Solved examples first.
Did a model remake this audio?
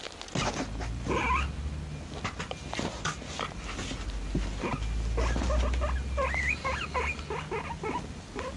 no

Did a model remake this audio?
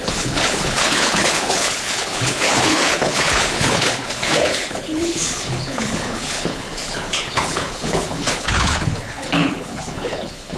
yes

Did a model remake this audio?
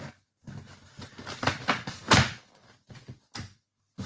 no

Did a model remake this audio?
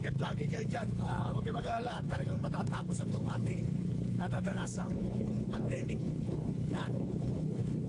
yes